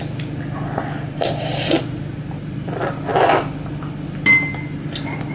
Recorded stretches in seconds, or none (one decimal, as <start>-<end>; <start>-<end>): 0.0-5.3

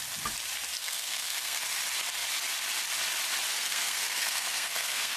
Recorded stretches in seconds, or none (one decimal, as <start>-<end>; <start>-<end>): 0.0-0.8; 1.6-3.5

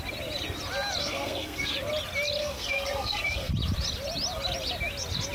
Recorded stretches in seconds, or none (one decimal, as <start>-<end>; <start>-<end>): 0.0-1.0; 1.7-2.4; 3.5-5.3

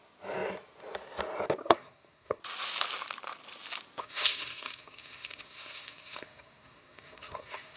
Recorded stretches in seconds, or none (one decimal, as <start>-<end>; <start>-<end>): 0.0-1.6; 2.4-4.0

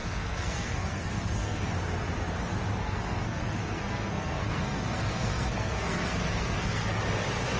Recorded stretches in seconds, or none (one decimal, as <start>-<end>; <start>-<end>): 1.7-2.8; 7.0-7.6

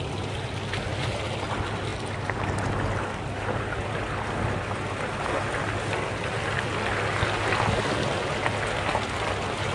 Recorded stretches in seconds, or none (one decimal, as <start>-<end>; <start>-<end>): 0.0-9.7